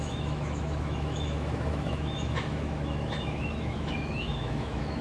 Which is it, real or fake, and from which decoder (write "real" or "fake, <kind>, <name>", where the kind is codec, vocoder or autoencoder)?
fake, autoencoder, DAC-VAE